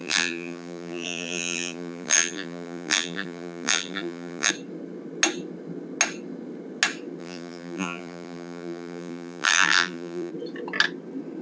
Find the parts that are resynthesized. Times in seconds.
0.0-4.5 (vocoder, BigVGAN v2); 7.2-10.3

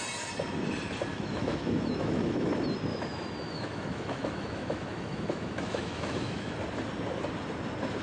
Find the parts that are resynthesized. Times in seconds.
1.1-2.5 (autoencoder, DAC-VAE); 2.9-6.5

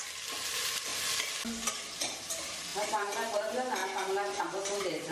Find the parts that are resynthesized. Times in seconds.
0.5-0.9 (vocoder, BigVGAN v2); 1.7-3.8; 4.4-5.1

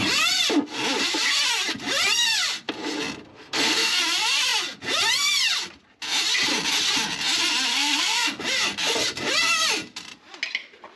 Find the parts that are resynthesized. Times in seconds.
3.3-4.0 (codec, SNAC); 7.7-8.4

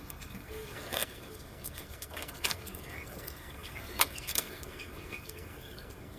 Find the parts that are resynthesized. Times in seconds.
0.0-6.2 (codec, SNAC)

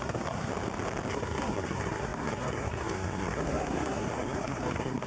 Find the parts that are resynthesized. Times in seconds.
0.0-0.5 (codec, SNAC); 1.1-5.1